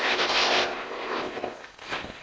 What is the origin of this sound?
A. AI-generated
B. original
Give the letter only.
A